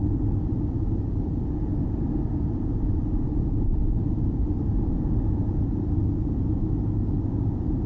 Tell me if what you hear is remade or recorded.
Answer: recorded